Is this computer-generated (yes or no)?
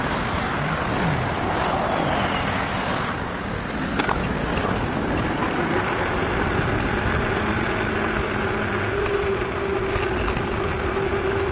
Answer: no